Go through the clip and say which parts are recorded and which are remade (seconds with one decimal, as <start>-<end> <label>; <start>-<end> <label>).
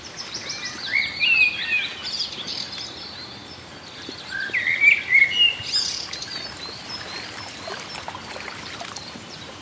0.0-9.6 recorded